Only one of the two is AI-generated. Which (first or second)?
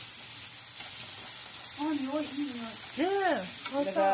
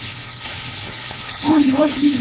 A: second